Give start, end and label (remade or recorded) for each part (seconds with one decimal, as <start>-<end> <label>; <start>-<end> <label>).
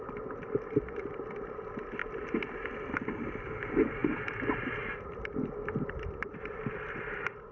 0.0-7.5 recorded